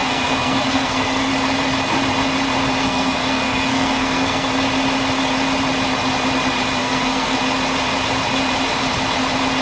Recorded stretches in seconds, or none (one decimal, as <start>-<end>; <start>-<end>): 1.3-2.8; 4.5-6.8; 7.4-9.6